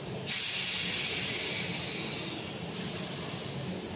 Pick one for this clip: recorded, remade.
recorded